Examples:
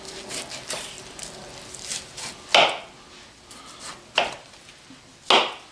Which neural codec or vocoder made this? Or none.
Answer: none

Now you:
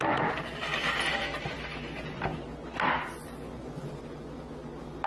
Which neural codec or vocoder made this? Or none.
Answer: none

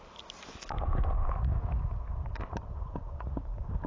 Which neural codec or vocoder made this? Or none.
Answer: none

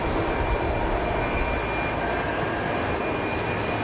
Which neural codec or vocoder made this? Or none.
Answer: none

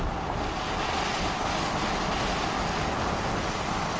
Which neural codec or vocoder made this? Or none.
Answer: none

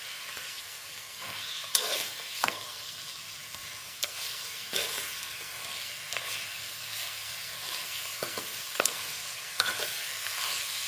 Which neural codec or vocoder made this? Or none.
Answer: codec, SNAC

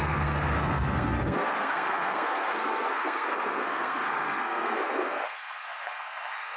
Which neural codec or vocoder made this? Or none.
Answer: codec, SNAC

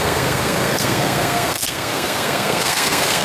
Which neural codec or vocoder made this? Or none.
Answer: codec, SNAC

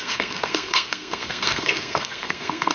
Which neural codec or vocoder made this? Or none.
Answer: codec, SNAC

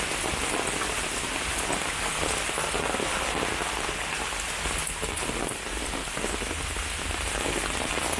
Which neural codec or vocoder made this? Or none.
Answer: none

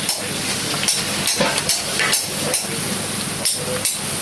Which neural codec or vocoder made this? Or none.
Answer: none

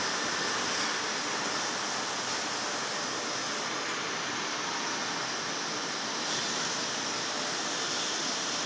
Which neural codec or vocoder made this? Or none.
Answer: none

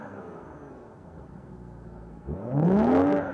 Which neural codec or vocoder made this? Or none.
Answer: codec, SNAC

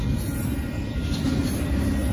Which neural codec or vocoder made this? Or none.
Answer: none